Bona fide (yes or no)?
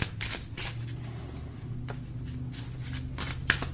yes